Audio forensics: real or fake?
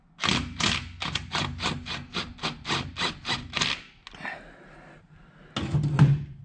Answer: real